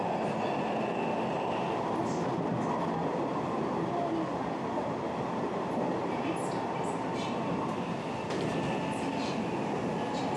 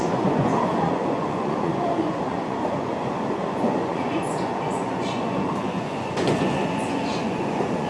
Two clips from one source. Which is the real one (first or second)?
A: first